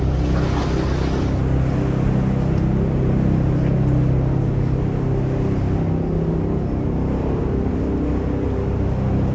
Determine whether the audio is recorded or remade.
recorded